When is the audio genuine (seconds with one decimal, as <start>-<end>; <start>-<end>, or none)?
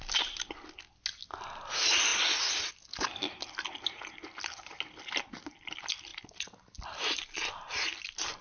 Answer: 0.0-8.4